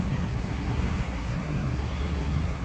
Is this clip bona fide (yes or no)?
no